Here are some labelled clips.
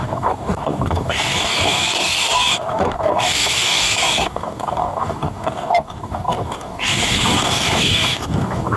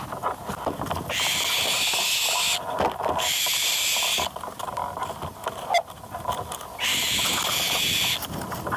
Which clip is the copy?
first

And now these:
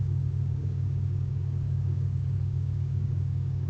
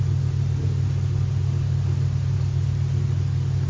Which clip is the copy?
first